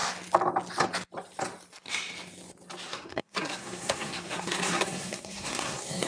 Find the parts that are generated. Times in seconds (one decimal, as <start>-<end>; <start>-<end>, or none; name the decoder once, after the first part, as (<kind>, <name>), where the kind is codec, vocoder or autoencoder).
2.9-6.1 (codec, SNAC)